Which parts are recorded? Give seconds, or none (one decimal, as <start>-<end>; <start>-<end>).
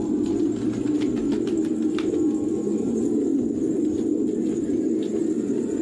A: 0.0-5.8